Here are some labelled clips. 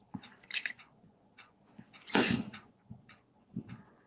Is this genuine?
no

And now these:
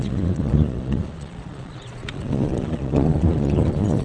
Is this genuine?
no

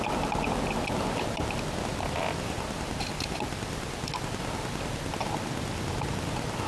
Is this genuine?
yes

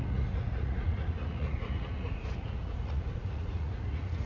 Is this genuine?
no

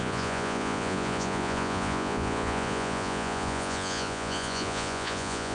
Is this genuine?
no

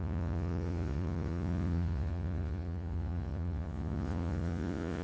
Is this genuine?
no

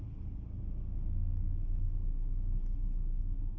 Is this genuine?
yes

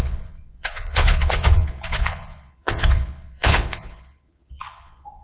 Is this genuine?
no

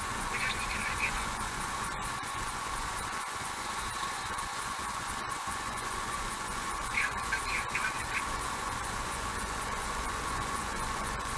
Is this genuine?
no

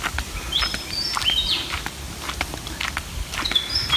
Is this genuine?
yes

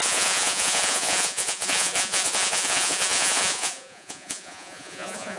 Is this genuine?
no